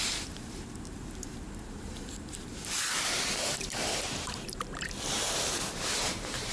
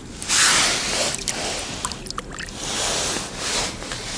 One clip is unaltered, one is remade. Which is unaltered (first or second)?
second